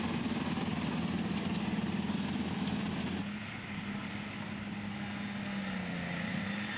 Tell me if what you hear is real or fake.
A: real